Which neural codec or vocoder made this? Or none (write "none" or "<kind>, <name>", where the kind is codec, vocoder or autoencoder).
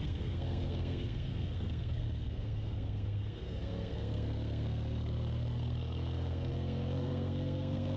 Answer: codec, SNAC